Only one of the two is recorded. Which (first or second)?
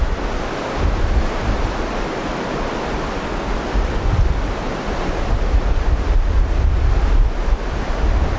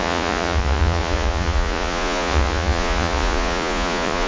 first